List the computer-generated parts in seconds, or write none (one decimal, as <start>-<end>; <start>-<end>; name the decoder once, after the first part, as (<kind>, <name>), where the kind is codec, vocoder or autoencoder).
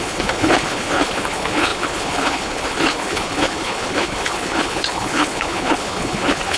0.0-6.6 (codec, HILCodec)